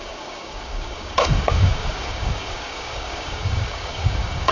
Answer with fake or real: fake